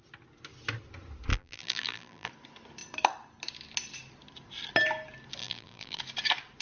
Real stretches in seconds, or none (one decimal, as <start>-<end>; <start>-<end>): 0.0-1.3; 2.3-5.4; 6.0-6.6